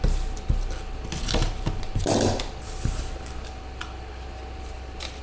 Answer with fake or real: real